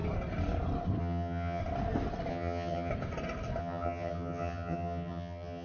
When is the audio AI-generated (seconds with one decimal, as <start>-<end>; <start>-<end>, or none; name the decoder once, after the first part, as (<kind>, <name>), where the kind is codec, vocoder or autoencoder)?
1.0-1.6 (vocoder, HiFi-GAN); 2.3-2.9; 3.6-5.6